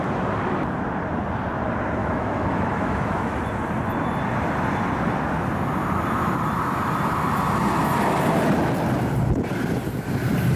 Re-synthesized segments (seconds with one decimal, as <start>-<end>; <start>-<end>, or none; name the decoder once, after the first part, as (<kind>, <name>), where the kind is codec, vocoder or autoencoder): 2.0-3.4 (autoencoder, DAC-VAE)